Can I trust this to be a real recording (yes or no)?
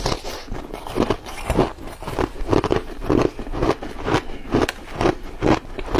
yes